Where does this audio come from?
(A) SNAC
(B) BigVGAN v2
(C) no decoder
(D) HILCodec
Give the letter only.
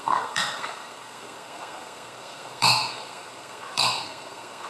A